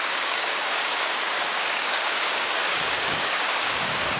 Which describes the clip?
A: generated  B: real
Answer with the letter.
A